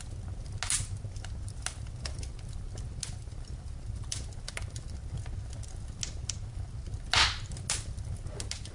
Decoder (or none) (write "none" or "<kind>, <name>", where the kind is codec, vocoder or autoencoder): none